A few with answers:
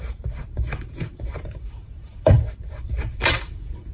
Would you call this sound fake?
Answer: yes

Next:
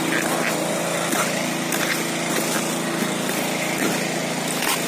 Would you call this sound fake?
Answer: no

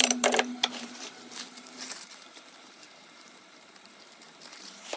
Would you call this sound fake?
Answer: yes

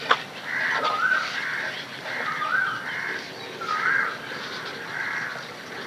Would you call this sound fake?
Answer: yes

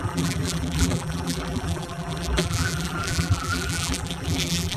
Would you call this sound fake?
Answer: yes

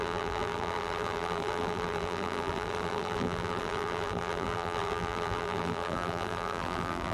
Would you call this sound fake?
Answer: yes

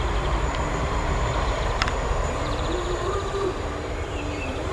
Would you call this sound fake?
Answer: yes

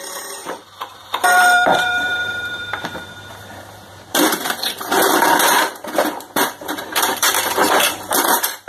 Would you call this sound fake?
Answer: yes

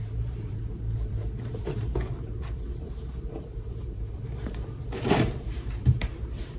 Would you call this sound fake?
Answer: yes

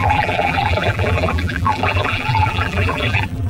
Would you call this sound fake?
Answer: yes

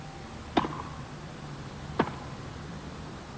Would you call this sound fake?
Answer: yes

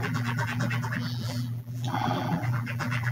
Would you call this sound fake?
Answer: yes